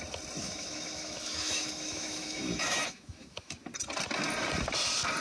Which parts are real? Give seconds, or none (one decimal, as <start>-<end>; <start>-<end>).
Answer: 0.0-0.4; 3.5-5.2